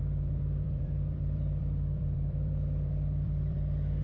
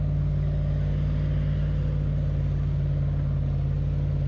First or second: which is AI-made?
first